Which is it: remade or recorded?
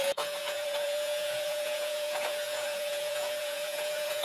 remade